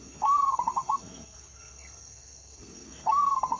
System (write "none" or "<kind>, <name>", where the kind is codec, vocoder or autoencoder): codec, SNAC